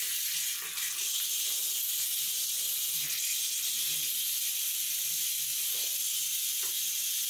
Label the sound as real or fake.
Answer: real